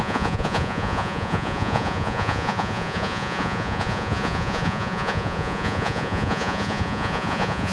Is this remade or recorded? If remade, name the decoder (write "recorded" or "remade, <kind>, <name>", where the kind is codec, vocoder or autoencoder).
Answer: remade, vocoder, Vocos